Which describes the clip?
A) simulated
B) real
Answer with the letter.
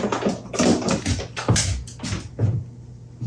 B